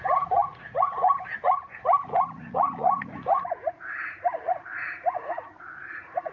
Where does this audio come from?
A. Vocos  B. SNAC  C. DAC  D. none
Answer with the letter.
A